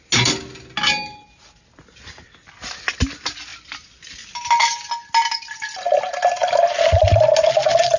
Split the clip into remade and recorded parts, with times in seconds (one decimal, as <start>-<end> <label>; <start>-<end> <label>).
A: 0.0-8.0 recorded